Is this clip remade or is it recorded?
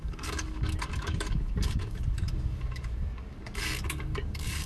remade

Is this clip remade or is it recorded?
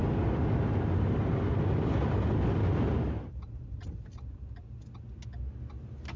recorded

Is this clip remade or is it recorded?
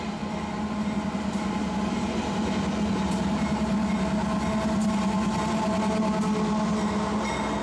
recorded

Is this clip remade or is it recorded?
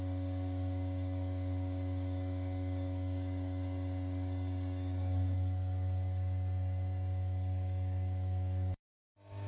remade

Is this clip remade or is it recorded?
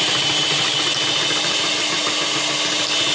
recorded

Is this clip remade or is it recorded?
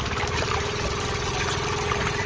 recorded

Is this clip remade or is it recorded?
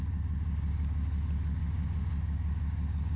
recorded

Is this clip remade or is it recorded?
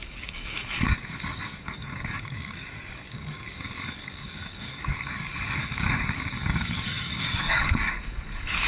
remade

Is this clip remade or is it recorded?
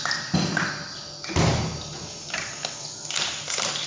recorded